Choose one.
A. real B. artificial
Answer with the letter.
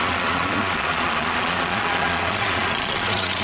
B